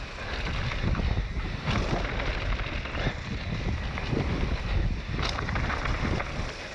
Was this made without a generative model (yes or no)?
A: yes